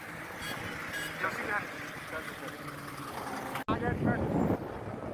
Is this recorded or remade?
recorded